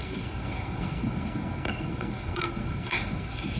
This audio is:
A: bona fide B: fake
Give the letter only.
B